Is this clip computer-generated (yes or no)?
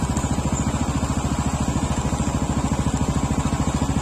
no